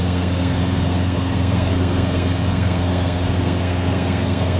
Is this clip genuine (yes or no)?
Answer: no